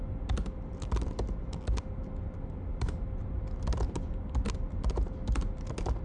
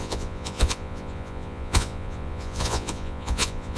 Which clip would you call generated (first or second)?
second